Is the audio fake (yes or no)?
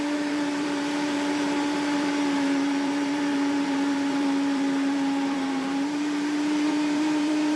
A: yes